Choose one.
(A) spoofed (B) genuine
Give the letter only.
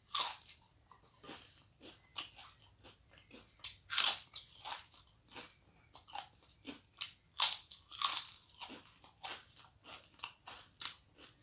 B